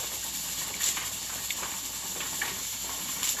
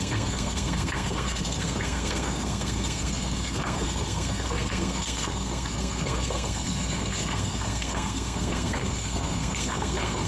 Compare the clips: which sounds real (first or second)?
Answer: first